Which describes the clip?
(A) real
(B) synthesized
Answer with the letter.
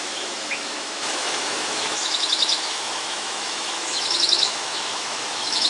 B